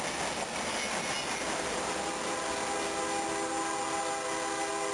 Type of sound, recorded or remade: recorded